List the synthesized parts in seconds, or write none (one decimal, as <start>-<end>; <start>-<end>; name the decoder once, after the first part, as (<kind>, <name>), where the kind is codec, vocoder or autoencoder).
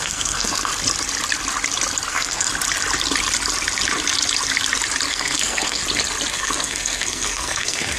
0.0-0.7 (codec, SNAC); 2.1-2.5; 5.1-5.8; 6.3-8.0